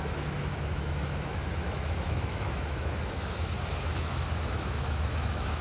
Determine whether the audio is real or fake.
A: fake